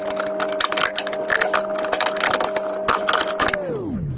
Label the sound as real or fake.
real